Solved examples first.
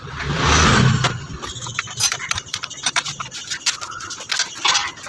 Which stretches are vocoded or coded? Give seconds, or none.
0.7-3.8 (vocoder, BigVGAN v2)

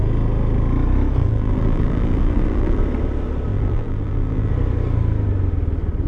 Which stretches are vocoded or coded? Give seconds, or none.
1.2-2.8 (vocoder, BigVGAN v2); 3.5-4.5

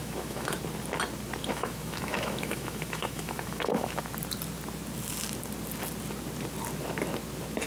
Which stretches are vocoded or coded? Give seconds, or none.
0.0-0.6 (autoencoder, DAC-VAE); 1.5-4.0

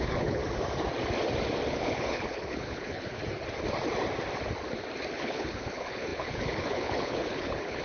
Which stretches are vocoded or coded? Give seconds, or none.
0.0-0.4 (codec, HILCodec); 1.7-3.2; 5.1-7.8